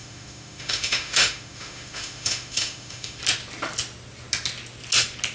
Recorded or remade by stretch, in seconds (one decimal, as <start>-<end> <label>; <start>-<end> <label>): 0.0-3.2 remade; 3.2-5.3 recorded